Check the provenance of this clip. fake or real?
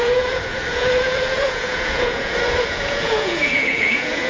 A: fake